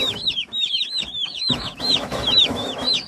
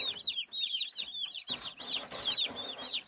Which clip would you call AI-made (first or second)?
first